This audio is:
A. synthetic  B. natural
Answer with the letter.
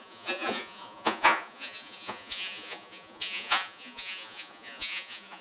A